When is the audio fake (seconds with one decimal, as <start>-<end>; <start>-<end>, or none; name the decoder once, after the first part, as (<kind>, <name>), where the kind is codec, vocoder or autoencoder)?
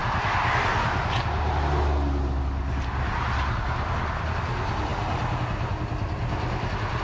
none